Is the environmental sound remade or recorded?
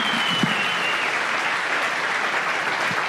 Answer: recorded